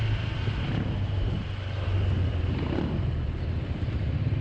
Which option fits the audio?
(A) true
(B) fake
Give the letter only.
B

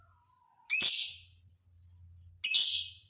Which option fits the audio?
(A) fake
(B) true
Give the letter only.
B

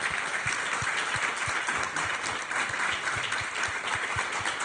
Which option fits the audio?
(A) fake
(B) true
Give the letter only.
B